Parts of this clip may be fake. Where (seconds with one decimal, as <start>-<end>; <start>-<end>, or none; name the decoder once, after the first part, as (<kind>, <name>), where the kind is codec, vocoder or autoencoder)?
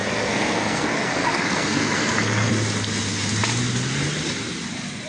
0.0-2.5 (codec, SNAC)